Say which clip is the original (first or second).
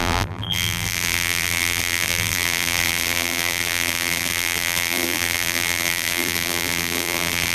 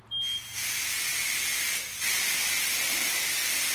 second